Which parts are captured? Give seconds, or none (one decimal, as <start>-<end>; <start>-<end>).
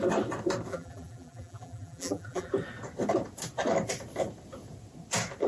0.0-0.7; 2.5-5.5